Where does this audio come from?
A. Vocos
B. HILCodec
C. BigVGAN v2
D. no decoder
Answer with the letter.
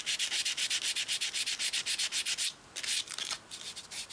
D